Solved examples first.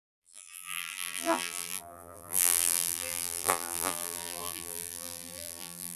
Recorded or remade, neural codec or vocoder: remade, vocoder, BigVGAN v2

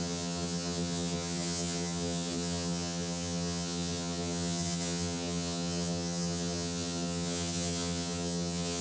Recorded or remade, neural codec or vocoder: remade, vocoder, HiFi-GAN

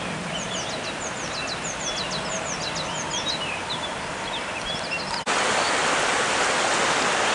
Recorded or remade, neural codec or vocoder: recorded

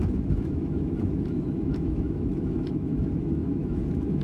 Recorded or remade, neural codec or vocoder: remade, autoencoder, DAC-VAE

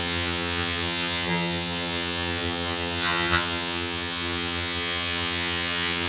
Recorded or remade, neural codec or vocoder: remade, vocoder, HiFi-GAN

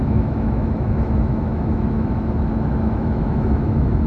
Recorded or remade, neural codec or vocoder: remade, autoencoder, DAC-VAE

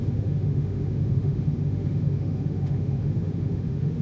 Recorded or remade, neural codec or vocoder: remade, autoencoder, DAC-VAE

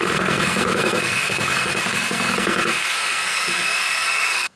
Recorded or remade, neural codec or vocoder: remade, codec, SNAC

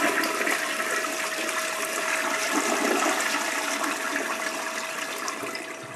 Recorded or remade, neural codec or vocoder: recorded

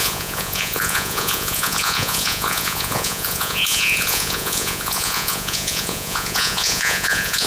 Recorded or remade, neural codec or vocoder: remade, vocoder, Vocos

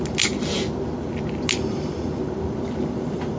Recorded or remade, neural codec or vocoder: recorded